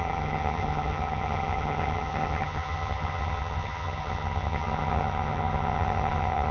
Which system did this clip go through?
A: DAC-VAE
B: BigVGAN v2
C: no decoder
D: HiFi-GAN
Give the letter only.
D